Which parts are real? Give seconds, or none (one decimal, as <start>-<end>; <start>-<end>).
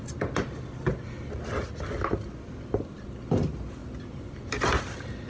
0.0-5.3